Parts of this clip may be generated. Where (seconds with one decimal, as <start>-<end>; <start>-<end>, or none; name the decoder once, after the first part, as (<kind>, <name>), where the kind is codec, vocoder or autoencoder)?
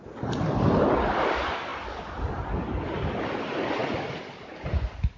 none